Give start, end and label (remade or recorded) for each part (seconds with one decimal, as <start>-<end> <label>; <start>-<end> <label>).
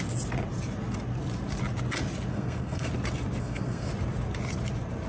0.0-2.3 recorded; 2.3-2.9 remade; 2.9-3.4 recorded; 3.4-3.9 remade; 3.9-5.1 recorded